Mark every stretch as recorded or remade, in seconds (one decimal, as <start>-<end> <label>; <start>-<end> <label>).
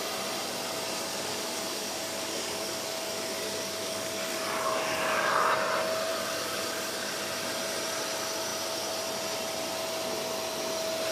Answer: 0.0-1.1 recorded; 1.1-5.3 remade; 5.3-6.1 recorded; 6.1-7.1 remade; 7.1-11.1 recorded